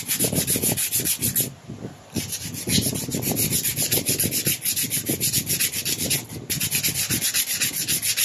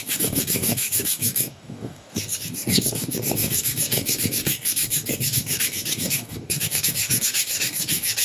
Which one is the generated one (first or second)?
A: second